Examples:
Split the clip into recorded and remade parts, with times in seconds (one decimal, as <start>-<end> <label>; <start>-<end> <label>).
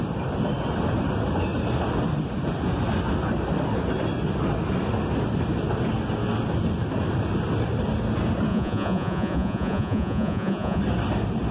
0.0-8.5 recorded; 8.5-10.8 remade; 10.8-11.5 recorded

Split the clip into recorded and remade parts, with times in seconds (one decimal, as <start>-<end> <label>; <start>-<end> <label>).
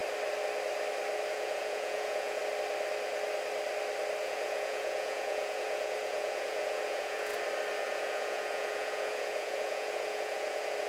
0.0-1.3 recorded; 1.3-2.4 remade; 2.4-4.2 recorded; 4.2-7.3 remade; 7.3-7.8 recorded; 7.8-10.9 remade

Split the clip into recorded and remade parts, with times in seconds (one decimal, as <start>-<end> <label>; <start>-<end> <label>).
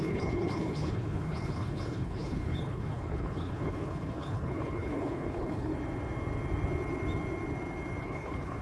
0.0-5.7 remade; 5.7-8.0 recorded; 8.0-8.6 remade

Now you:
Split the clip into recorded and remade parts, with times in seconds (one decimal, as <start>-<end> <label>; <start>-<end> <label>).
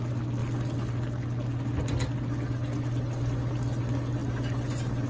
0.0-5.1 recorded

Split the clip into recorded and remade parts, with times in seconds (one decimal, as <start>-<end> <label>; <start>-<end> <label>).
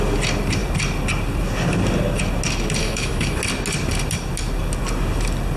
0.0-2.8 recorded; 2.8-3.4 remade; 3.4-5.6 recorded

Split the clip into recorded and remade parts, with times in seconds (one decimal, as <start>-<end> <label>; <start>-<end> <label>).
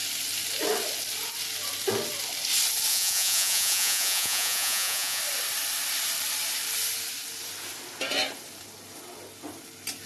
0.0-2.9 recorded; 2.9-5.2 remade; 5.2-10.1 recorded